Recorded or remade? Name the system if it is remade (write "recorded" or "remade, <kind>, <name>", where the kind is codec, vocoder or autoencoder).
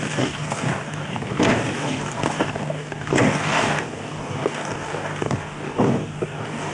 remade, codec, DAC